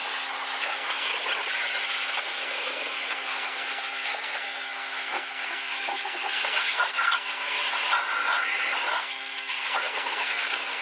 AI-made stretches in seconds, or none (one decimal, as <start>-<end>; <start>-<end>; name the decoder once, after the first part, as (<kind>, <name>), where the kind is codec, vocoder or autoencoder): 0.6-1.1 (codec, SNAC); 2.2-7.6; 8.9-10.8